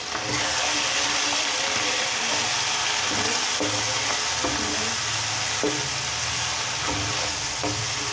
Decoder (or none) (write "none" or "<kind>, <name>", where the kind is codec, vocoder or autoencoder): none